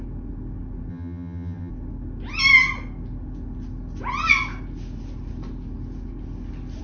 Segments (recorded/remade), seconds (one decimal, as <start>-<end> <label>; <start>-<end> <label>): 0.0-0.9 recorded; 0.9-1.7 remade; 1.7-6.8 recorded